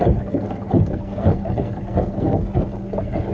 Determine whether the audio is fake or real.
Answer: fake